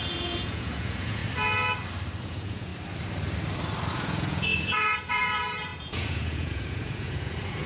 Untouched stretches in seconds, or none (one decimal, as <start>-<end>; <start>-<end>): 1.2-2.2; 2.7-3.9